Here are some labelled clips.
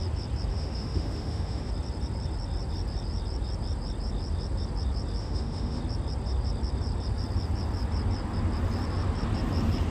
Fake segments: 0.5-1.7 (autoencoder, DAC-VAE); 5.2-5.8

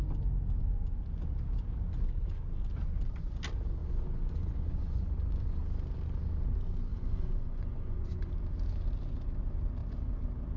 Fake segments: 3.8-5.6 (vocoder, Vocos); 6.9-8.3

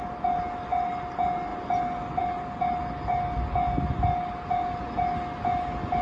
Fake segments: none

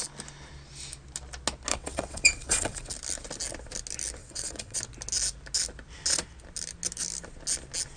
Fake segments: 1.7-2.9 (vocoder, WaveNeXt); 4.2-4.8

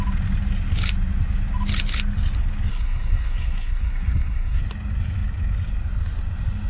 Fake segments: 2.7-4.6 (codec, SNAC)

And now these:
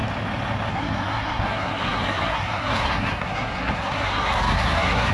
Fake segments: 0.7-5.1 (codec, SNAC)